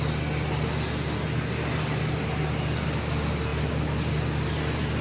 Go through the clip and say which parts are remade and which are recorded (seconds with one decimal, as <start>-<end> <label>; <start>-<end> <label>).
0.0-5.0 recorded